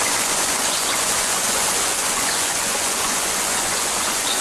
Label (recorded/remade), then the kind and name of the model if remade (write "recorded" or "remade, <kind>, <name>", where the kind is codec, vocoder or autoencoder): remade, vocoder, Vocos